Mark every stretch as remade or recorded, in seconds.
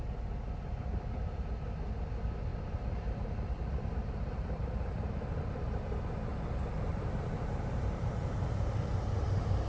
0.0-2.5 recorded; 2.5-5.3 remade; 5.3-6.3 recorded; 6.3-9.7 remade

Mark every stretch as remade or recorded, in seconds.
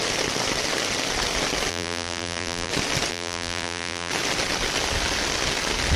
0.0-1.7 recorded; 1.7-2.7 remade; 2.7-3.1 recorded; 3.1-4.1 remade; 4.1-6.0 recorded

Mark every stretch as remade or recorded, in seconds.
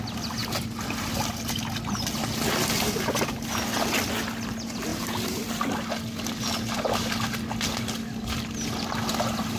0.0-4.9 recorded; 4.9-5.5 remade; 5.5-9.6 recorded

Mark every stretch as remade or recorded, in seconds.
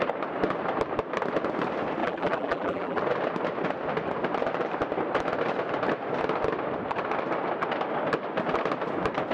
0.0-2.0 recorded; 2.0-3.0 remade; 3.0-9.3 recorded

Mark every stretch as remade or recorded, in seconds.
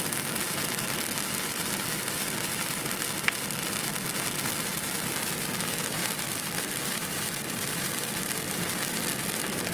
0.0-6.0 recorded; 6.0-8.3 remade; 8.3-9.7 recorded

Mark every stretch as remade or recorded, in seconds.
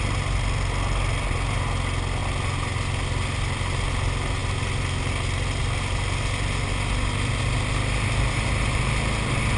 0.0-9.6 recorded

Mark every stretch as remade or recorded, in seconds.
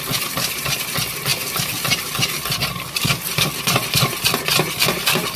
0.0-5.4 recorded